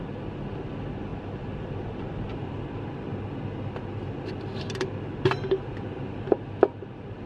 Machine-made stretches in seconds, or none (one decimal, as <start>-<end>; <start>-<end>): none